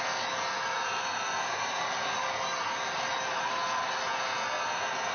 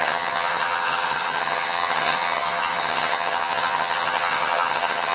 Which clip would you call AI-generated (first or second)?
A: second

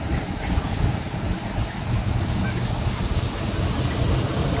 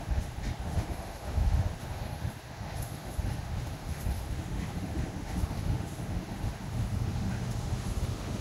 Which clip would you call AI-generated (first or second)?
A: second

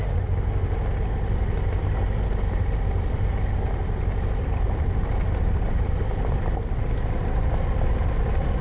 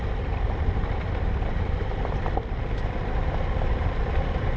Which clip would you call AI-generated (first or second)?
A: second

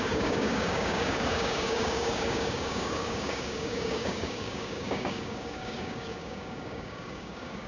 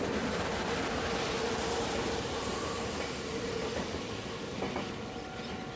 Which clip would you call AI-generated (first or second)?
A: first